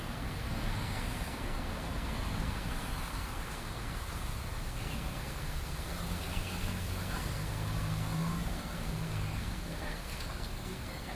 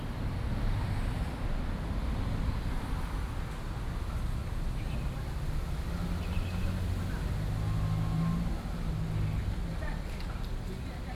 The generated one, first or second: first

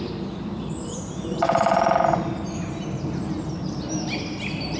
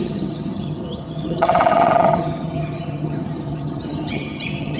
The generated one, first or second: second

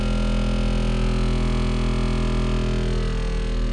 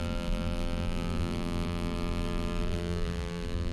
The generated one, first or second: second